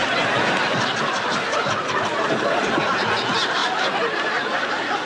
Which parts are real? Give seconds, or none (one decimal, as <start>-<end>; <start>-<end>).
0.0-5.1